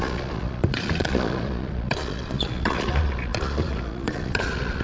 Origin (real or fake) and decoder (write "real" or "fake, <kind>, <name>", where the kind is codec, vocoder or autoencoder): fake, vocoder, Vocos